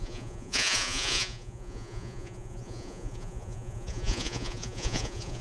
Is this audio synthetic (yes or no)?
yes